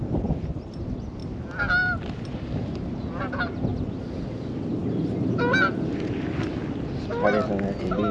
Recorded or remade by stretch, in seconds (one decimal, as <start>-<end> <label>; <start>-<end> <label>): 0.0-8.1 recorded